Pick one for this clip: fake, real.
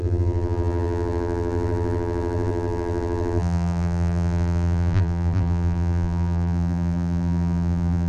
fake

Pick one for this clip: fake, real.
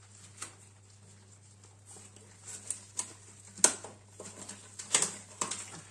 real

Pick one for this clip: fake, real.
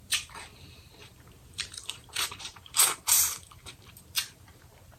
fake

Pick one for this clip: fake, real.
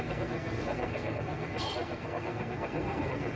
fake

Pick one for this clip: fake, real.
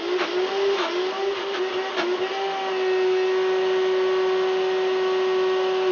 real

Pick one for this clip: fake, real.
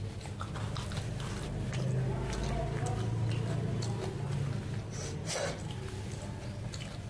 real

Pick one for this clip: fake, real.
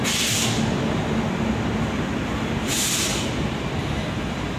real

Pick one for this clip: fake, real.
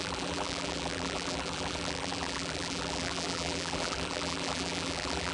fake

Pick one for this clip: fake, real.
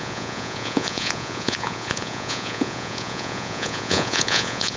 fake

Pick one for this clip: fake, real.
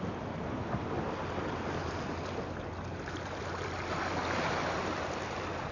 real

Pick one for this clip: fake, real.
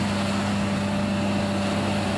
real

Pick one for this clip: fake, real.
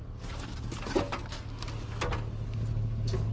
real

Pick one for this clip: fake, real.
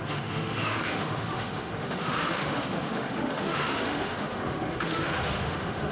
fake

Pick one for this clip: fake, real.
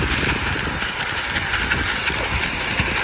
real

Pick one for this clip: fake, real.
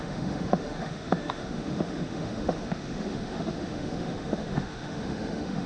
fake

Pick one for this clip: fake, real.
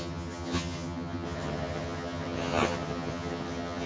fake